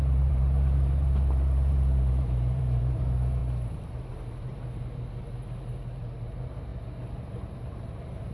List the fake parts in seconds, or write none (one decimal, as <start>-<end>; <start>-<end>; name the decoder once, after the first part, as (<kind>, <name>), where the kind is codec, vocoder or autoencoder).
0.0-3.4 (vocoder, BigVGAN v2); 4.1-4.5; 6.0-6.7; 7.5-8.3